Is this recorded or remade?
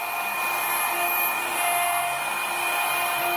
recorded